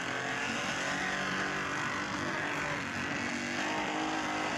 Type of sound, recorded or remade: recorded